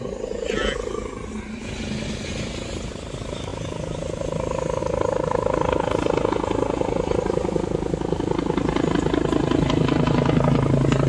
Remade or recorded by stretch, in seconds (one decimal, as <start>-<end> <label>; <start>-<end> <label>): 0.0-11.1 recorded